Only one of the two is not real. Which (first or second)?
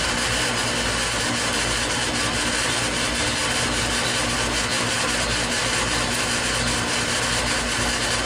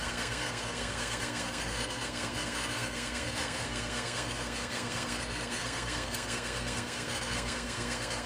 second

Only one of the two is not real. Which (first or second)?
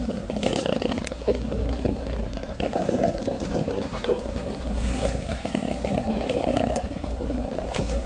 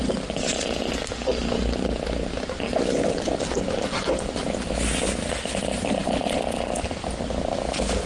first